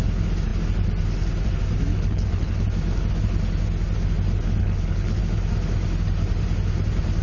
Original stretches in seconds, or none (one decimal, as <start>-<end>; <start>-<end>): 0.0-1.9; 2.6-4.6; 5.2-7.2